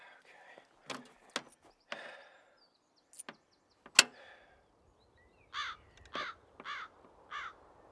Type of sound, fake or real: real